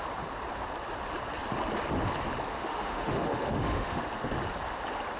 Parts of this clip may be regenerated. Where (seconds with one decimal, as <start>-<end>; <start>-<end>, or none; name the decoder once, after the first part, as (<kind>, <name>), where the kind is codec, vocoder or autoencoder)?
2.5-4.0 (autoencoder, DAC-VAE)